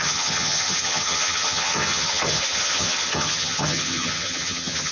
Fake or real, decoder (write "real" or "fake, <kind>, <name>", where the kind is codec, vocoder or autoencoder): fake, vocoder, HiFi-GAN